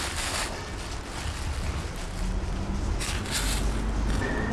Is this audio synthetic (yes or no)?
no